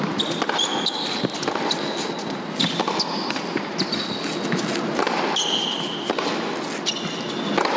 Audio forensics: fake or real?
real